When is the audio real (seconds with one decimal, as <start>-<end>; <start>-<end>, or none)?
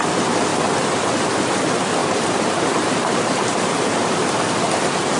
0.0-2.0; 4.3-5.2